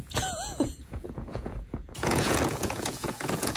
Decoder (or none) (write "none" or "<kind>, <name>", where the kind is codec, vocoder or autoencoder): vocoder, Vocos